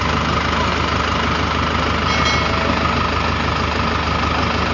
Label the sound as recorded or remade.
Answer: recorded